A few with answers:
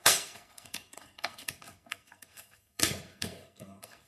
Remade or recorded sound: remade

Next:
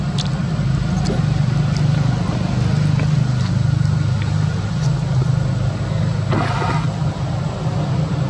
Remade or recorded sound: recorded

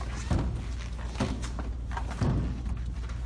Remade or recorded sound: recorded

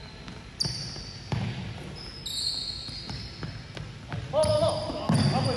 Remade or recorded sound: recorded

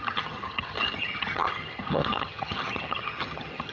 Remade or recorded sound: remade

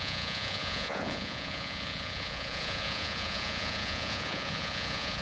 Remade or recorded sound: remade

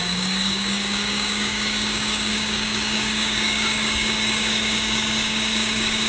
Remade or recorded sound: remade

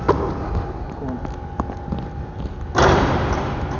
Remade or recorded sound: recorded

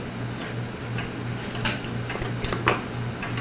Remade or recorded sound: recorded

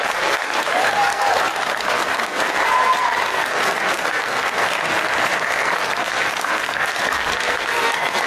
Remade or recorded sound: remade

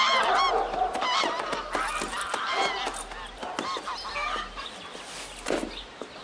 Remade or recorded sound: recorded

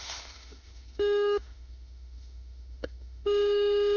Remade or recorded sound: remade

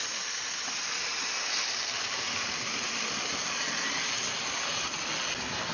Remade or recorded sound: recorded